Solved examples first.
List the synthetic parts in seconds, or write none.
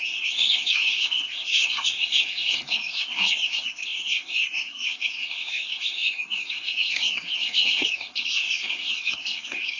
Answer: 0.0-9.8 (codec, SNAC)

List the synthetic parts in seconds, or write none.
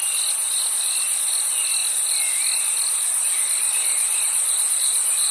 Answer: none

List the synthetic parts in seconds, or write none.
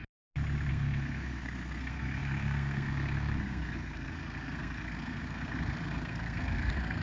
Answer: 0.7-7.0 (codec, SNAC)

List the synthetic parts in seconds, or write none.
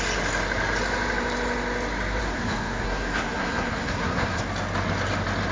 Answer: 2.2-4.4 (codec, SNAC)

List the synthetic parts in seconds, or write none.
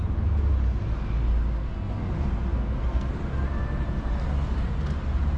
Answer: 1.6-2.1 (codec, SNAC); 2.5-3.1